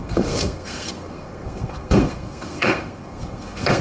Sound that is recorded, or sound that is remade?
remade